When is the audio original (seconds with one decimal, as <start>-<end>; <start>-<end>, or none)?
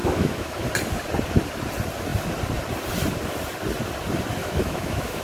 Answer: 0.7-4.4